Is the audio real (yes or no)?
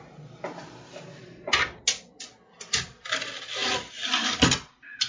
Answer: yes